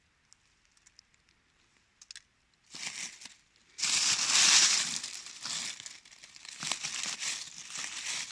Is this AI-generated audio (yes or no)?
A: no